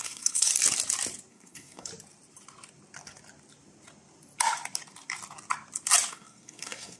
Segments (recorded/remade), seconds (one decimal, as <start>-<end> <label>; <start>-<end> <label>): 0.0-0.5 remade; 0.5-1.3 recorded; 1.3-1.9 remade; 1.9-6.1 recorded; 6.1-7.0 remade